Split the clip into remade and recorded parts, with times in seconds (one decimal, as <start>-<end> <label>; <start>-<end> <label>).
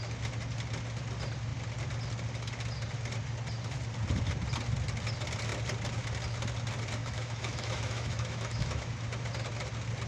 0.0-7.0 recorded; 7.0-8.9 remade; 8.9-10.1 recorded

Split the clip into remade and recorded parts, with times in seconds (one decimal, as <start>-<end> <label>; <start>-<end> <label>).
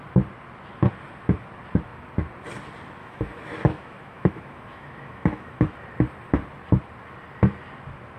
0.0-3.0 recorded; 3.0-5.7 remade; 5.7-8.2 recorded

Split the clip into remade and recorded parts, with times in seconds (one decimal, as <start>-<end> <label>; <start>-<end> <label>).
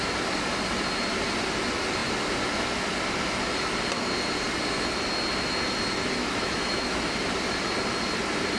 0.0-6.2 recorded; 6.2-7.0 remade; 7.0-8.6 recorded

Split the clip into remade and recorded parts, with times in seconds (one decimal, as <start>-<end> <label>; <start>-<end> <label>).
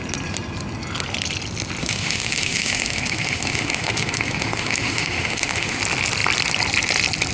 0.0-1.8 recorded; 1.8-5.8 remade; 5.8-7.3 recorded